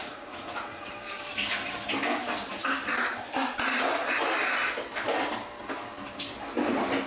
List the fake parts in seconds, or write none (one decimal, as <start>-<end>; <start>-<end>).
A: 0.0-0.9